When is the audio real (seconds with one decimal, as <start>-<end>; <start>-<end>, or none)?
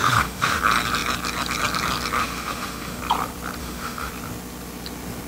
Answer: 0.6-2.2; 3.0-3.6; 4.1-5.3